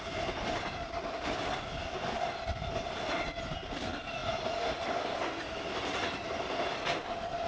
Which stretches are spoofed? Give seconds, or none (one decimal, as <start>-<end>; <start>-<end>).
none